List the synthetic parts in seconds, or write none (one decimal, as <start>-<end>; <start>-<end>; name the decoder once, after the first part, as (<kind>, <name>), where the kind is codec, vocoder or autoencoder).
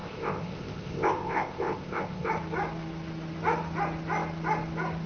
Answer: 0.0-2.3 (codec, ZipCodec)